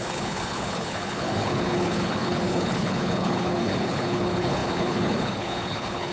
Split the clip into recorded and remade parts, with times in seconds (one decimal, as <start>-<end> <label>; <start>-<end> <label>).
0.0-6.1 remade